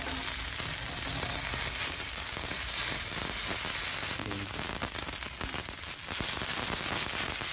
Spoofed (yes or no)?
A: no